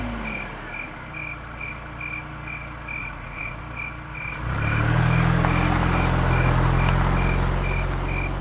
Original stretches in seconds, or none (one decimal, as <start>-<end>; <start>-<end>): 0.0-3.0; 3.6-8.4